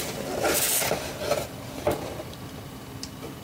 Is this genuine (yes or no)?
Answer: yes